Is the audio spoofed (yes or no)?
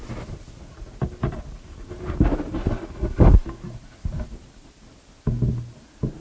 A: no